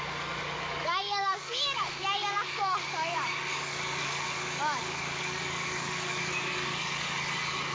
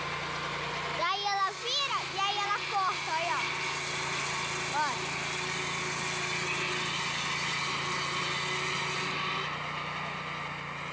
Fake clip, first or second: first